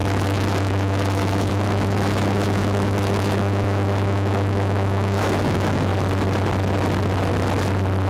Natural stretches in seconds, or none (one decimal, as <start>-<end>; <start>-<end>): 5.9-8.1